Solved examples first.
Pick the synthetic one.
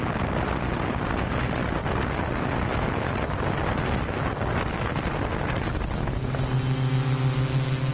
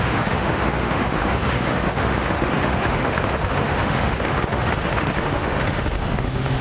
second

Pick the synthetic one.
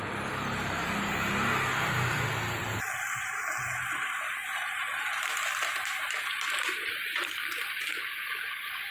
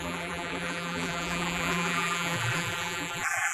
second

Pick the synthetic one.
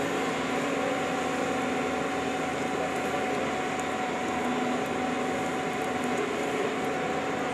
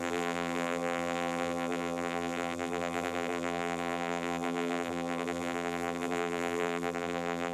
second